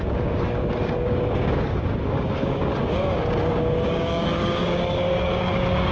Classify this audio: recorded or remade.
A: remade